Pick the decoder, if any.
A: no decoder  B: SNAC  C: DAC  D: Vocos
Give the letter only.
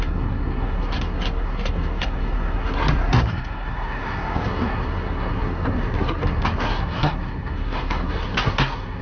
B